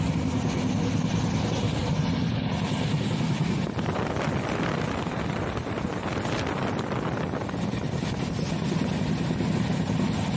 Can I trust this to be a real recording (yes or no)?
yes